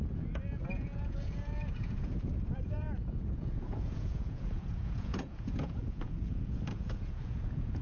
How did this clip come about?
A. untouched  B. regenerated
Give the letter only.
B